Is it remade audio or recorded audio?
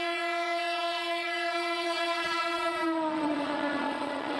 remade